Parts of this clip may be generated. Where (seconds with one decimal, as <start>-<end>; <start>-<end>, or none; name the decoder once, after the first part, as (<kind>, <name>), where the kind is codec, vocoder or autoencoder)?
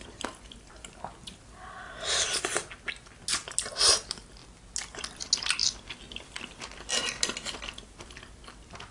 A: none